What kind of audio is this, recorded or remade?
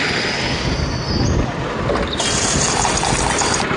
recorded